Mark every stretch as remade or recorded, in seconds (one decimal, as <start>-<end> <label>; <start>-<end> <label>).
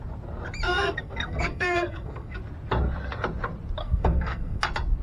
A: 0.0-0.7 recorded; 0.7-2.4 remade; 2.4-3.8 recorded; 3.8-4.6 remade; 4.6-5.0 recorded